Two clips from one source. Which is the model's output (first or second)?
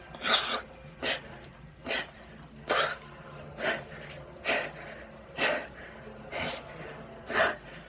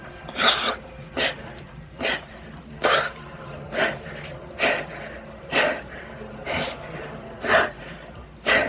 second